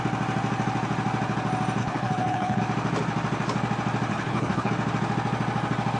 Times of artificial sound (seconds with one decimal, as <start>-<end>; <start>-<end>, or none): 1.8-2.6; 4.1-4.7